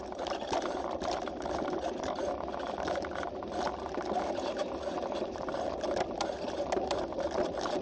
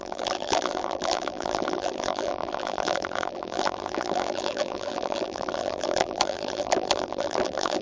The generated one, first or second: second